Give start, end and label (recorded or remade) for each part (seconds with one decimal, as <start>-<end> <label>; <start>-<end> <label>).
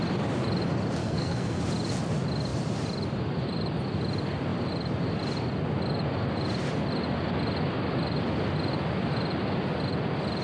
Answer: 0.0-1.0 recorded; 1.0-1.6 remade; 1.6-10.4 recorded